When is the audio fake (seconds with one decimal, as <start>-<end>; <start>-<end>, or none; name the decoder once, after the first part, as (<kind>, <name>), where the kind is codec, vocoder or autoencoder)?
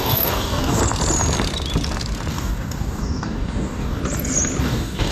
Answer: 0.0-0.8 (codec, DAC); 2.3-4.0; 4.6-5.1